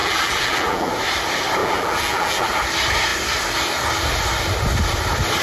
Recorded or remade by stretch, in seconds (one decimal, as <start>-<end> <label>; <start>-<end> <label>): 0.0-0.9 remade; 0.9-1.6 recorded; 1.6-2.5 remade; 2.5-5.4 recorded